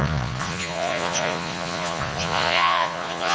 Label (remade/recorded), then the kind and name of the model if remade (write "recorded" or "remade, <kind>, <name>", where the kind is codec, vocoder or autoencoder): remade, vocoder, Vocos